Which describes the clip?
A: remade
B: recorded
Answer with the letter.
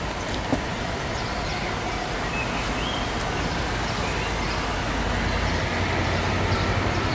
B